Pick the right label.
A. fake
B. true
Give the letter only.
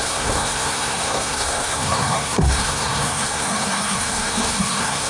A